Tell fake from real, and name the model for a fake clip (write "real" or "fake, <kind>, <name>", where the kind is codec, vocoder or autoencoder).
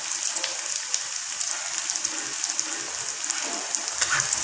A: real